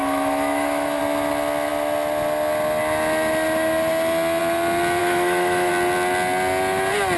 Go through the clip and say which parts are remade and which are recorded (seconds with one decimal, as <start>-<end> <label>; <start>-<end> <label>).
0.0-1.0 remade; 1.0-5.0 recorded; 5.0-5.7 remade; 5.7-7.2 recorded